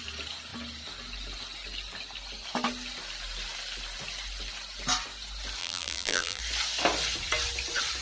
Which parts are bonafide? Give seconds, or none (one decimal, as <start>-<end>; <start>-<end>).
0.0-5.6; 6.4-8.0

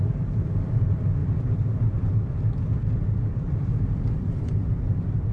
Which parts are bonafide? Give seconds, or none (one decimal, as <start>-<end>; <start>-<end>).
none